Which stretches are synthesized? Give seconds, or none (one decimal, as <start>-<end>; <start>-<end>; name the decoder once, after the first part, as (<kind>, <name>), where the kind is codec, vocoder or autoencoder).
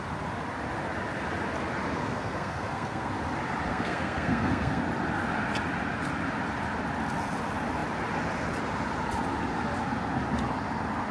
2.0-3.1 (codec, SNAC); 3.7-4.8